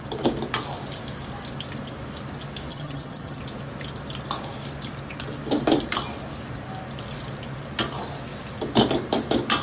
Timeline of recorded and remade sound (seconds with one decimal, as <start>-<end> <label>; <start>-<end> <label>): 0.0-2.7 recorded; 2.7-3.4 remade; 3.4-9.6 recorded